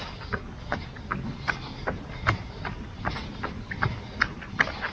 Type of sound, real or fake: real